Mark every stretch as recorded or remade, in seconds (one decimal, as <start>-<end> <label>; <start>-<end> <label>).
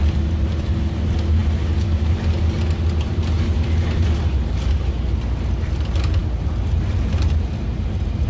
0.0-8.3 recorded